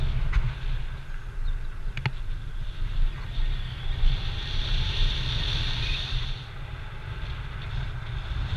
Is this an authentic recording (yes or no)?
yes